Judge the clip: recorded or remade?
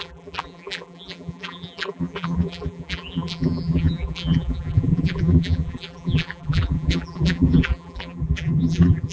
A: remade